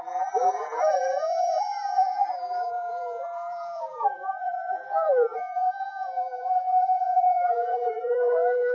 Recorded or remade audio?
remade